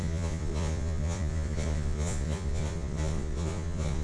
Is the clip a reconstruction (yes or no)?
yes